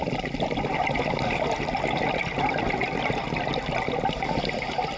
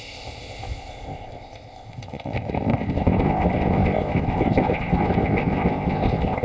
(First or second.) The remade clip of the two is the second